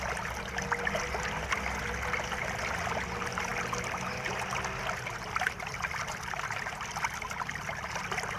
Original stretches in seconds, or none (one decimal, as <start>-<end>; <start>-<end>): 0.0-8.4